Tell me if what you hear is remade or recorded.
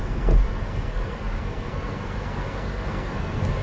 remade